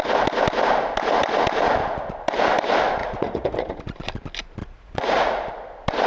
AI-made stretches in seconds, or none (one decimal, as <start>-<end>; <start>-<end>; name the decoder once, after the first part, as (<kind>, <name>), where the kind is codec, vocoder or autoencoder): 3.0-3.8 (vocoder, Vocos); 4.6-5.5